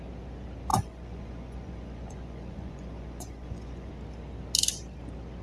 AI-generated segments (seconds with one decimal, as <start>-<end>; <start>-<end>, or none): 0.7-3.9